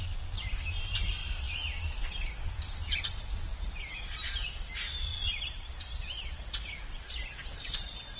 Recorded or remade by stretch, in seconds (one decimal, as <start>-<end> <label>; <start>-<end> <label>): 0.0-1.2 recorded; 1.2-2.1 remade; 2.1-2.8 recorded; 2.8-3.5 remade; 3.5-5.1 recorded; 5.1-6.4 remade; 6.4-8.2 recorded